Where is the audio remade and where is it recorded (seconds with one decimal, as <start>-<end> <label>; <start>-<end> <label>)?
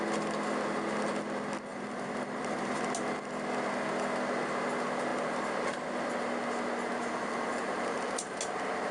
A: 0.0-1.7 recorded; 1.7-2.8 remade; 2.8-7.0 recorded; 7.0-8.4 remade; 8.4-8.9 recorded